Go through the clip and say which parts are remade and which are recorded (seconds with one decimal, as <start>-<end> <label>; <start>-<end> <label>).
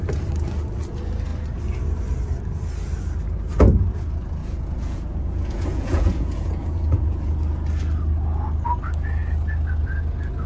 0.0-4.4 recorded; 4.4-7.4 remade; 7.4-10.5 recorded